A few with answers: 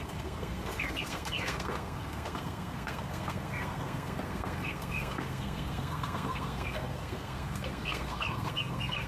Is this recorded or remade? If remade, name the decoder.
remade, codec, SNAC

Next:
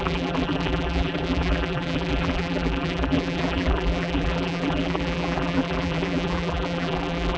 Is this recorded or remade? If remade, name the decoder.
remade, vocoder, BigVGAN v2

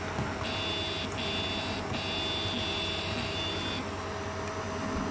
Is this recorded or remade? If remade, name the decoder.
recorded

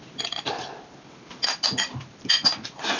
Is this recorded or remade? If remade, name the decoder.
recorded